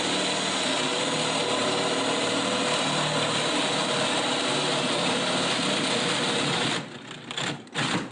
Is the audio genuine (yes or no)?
yes